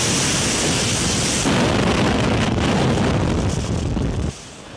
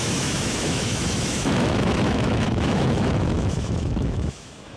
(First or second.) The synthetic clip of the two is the second